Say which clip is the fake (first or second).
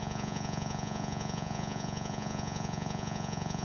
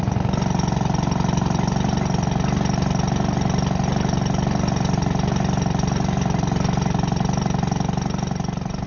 first